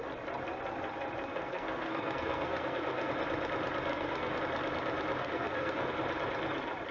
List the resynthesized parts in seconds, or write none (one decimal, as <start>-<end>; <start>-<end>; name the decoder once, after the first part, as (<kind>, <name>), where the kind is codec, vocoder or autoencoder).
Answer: 1.3-3.1 (codec, SNAC); 3.9-4.4; 5.2-5.9